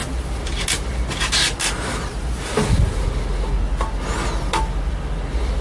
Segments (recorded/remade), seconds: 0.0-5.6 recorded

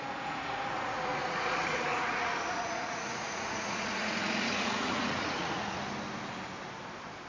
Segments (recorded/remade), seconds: 0.0-5.8 remade; 5.8-7.3 recorded

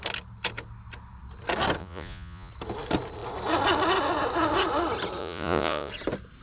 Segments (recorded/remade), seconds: 0.0-1.8 recorded; 1.8-2.5 remade; 2.5-5.2 recorded; 5.2-5.9 remade; 5.9-6.4 recorded

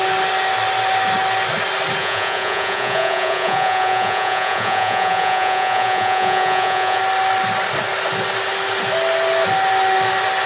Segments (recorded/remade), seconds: 0.0-2.0 recorded; 2.0-7.0 remade; 7.0-10.5 recorded

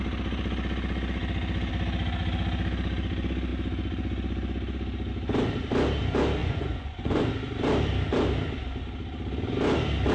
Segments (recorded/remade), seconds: 0.0-6.4 recorded; 6.4-7.2 remade; 7.2-10.1 recorded

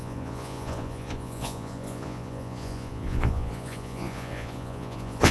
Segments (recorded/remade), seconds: 0.0-5.3 remade

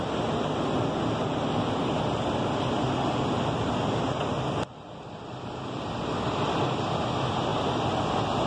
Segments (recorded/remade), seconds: 0.0-8.5 recorded

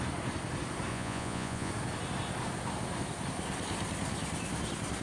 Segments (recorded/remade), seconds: 0.0-0.9 recorded; 0.9-1.7 remade; 1.7-5.0 recorded